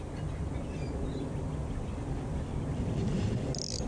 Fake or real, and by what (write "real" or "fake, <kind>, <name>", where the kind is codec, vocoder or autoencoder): real